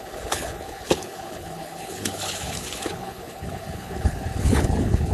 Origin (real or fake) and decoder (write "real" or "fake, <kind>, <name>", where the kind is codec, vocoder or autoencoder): fake, codec, HILCodec